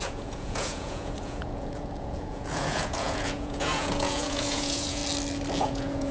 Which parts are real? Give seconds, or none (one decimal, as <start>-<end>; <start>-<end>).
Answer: 5.0-5.6

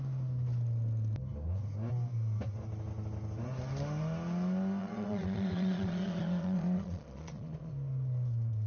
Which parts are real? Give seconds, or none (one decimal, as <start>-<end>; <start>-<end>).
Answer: 0.0-4.8; 7.7-8.7